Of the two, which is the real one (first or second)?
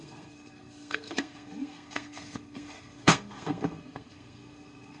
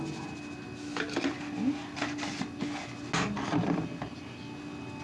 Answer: second